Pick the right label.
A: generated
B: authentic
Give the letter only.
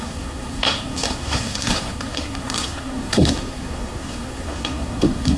A